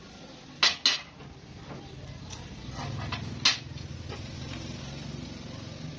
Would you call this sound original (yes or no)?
yes